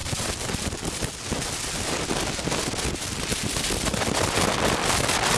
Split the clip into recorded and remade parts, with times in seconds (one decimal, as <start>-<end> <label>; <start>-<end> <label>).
0.0-1.0 remade; 1.0-3.3 recorded; 3.3-4.4 remade; 4.4-5.4 recorded